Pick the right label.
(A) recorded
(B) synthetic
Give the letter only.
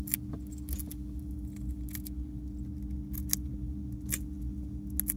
A